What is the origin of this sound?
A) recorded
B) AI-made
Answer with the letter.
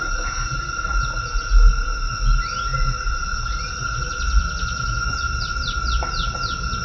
A